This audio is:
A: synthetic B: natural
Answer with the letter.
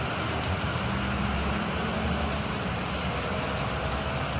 B